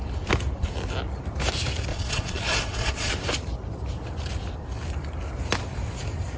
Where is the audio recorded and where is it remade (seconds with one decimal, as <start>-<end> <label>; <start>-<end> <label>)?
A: 0.0-1.9 recorded; 1.9-3.1 remade; 3.1-6.4 recorded